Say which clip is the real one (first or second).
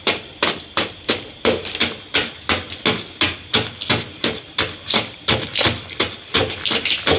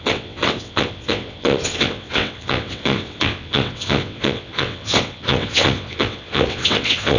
first